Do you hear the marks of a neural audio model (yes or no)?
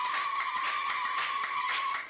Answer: yes